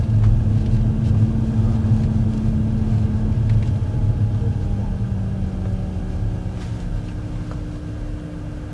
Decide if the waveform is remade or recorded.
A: recorded